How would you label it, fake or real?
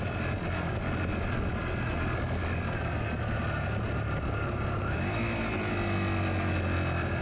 real